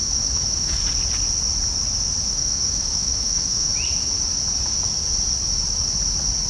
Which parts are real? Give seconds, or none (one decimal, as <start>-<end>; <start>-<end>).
0.8-2.2; 3.7-6.5